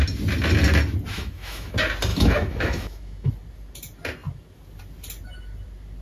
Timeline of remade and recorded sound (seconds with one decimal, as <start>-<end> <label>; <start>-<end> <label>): 0.0-1.1 recorded; 1.1-1.7 remade; 1.7-2.1 recorded; 2.1-3.3 remade; 3.3-6.0 recorded